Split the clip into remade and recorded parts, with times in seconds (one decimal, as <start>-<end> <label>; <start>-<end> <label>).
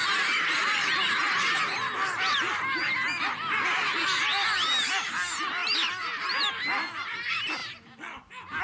0.0-8.6 recorded